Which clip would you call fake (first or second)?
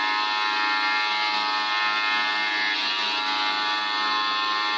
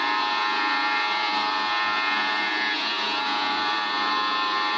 second